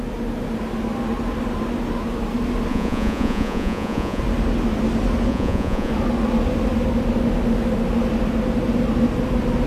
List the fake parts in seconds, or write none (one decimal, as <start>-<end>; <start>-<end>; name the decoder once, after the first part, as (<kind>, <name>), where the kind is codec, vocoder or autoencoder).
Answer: 2.7-4.2 (vocoder, Vocos); 5.3-5.9